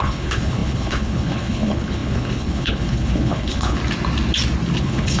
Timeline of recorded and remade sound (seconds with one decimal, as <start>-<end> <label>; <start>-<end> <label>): 0.0-3.8 remade; 3.8-4.8 recorded; 4.8-5.2 remade